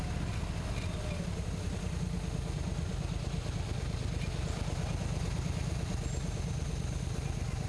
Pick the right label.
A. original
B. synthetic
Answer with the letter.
A